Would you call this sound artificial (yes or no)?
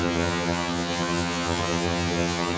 yes